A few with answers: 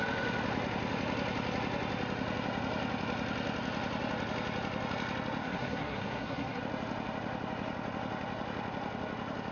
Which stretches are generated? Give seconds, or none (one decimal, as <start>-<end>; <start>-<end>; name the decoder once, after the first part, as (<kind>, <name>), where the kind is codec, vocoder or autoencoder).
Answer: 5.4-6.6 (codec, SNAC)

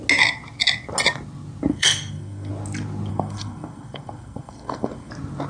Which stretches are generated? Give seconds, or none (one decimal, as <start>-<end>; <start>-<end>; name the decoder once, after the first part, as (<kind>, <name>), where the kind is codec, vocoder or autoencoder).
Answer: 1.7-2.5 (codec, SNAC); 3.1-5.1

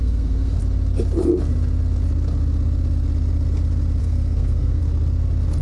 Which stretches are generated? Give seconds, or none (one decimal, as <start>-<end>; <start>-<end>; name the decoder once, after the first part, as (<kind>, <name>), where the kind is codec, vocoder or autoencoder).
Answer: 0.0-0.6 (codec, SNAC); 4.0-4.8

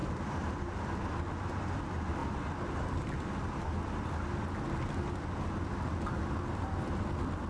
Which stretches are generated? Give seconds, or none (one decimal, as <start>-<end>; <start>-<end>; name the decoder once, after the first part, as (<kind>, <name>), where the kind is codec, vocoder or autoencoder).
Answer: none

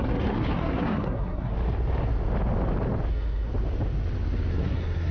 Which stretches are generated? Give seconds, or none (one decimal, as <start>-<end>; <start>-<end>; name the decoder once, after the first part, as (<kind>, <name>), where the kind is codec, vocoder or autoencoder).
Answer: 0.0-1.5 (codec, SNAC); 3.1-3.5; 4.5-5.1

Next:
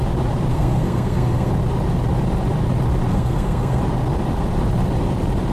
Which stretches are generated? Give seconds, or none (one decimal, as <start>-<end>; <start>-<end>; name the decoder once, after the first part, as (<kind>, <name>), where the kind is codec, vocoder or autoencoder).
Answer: 0.5-1.5 (codec, SNAC); 3.1-3.8

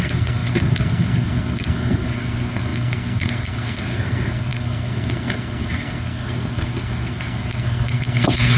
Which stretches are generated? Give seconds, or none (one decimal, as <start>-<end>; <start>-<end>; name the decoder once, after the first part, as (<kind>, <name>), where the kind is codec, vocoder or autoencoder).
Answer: 0.0-8.6 (codec, SNAC)

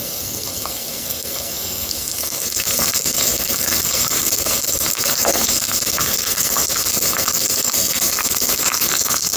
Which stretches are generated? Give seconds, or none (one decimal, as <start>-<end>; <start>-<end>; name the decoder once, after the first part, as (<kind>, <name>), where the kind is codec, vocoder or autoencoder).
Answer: 0.0-9.4 (codec, SNAC)